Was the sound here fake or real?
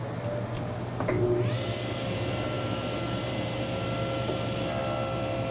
real